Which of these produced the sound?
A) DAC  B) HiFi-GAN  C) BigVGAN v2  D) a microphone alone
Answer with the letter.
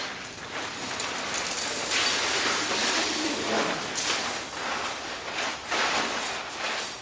C